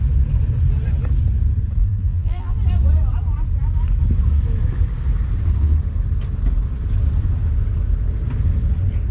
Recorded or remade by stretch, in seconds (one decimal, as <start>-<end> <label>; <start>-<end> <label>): 0.0-1.8 recorded; 1.8-2.6 remade; 2.6-9.1 recorded